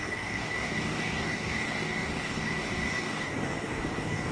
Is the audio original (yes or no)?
no